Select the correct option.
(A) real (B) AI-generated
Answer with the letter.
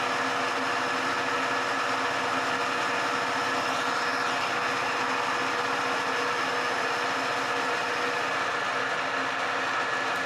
A